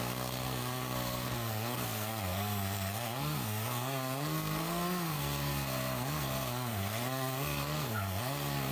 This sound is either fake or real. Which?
fake